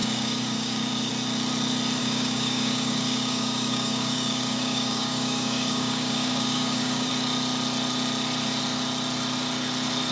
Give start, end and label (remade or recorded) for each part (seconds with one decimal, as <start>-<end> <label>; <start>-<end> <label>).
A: 0.0-1.1 remade; 1.1-2.0 recorded; 2.0-7.1 remade; 7.1-10.1 recorded